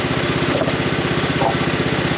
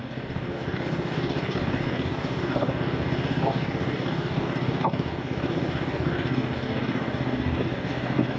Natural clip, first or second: first